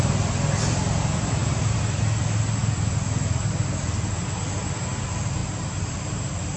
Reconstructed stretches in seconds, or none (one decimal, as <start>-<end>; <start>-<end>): 1.4-2.0; 5.4-6.6